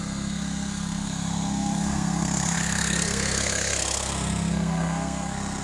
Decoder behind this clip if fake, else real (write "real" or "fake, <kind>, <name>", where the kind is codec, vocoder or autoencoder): fake, codec, SNAC